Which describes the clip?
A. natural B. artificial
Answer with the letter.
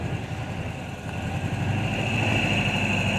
A